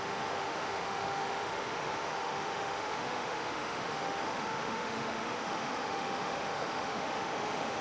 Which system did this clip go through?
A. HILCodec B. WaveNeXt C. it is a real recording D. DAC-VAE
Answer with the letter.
D